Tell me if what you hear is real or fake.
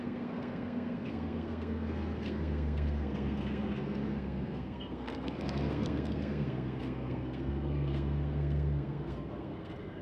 fake